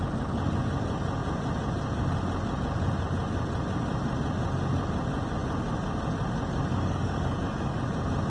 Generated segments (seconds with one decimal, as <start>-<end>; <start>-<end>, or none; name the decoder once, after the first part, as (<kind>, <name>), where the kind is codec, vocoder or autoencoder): 6.7-7.8 (codec, DAC)